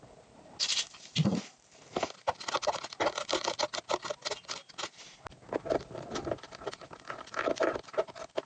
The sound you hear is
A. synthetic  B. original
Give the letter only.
B